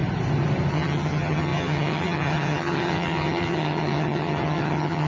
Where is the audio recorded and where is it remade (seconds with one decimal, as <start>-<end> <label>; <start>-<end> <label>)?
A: 0.0-0.7 recorded; 0.7-5.1 remade